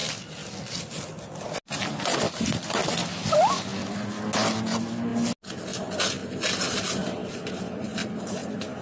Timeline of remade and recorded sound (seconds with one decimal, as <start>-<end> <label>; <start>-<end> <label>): 0.0-8.8 recorded